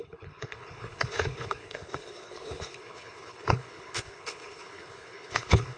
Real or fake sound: fake